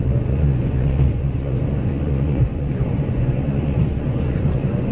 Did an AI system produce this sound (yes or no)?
yes